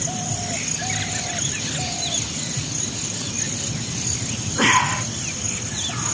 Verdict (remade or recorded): recorded